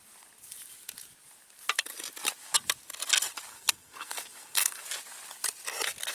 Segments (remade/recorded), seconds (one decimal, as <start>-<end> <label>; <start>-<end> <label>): 0.0-3.5 recorded; 3.5-4.8 remade; 4.8-6.1 recorded

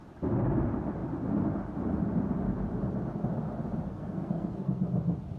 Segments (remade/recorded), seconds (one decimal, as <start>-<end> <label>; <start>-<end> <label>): 0.0-3.9 recorded; 3.9-4.8 remade; 4.8-5.4 recorded